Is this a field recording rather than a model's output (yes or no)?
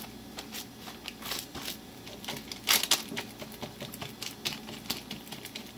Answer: yes